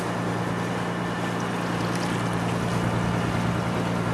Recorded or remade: recorded